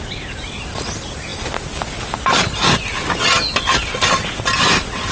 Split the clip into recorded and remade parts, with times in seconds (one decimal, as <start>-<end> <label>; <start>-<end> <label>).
0.0-5.1 recorded